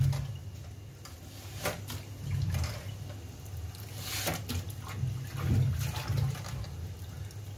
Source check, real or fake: real